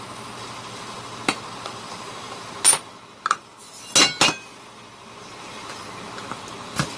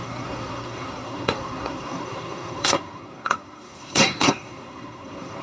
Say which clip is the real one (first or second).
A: first